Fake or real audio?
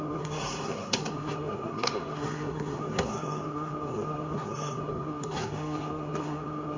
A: fake